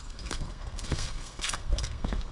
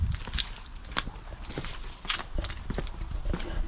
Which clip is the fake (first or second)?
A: first